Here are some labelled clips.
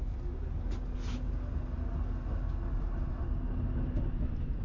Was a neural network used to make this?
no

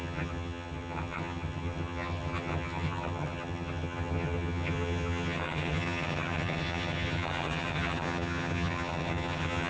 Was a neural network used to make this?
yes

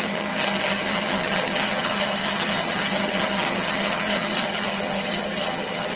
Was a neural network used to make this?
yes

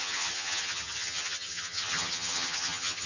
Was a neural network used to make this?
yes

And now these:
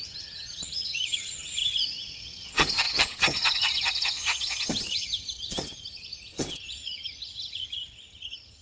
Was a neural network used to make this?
yes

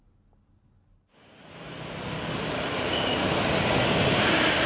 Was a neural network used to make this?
no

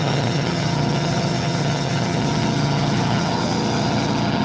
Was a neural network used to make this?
yes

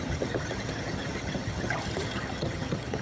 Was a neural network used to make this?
yes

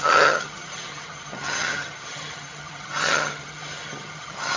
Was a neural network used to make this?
yes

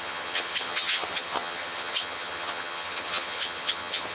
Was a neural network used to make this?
yes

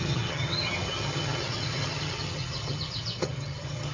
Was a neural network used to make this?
yes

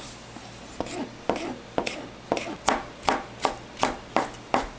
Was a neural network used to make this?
no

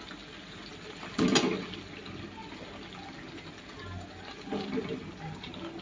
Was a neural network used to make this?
no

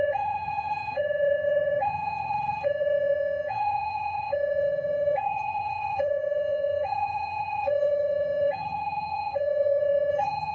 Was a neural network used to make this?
yes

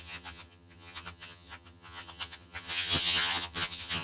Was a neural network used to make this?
yes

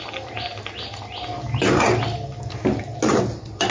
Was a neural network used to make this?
no